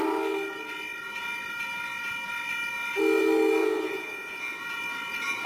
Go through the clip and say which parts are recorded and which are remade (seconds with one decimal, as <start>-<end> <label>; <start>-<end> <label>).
0.0-3.6 recorded; 3.6-4.6 remade; 4.6-5.5 recorded